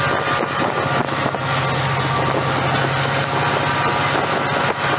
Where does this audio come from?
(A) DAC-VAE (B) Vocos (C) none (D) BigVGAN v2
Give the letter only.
C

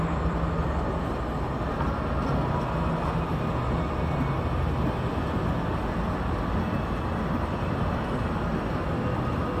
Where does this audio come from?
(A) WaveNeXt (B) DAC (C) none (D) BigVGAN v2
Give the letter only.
C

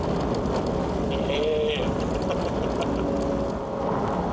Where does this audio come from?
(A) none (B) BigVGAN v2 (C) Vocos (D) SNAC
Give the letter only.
A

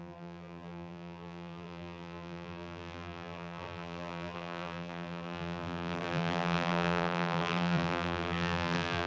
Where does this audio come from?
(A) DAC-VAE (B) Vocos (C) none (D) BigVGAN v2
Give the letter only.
D